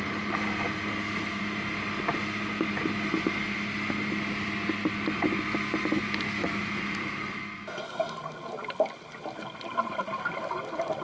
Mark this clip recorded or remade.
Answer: recorded